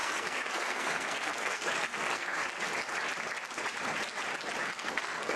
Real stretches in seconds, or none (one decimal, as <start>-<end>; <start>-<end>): 2.4-4.6